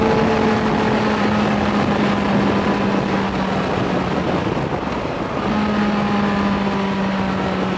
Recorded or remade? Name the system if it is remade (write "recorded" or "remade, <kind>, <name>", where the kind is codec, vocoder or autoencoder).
recorded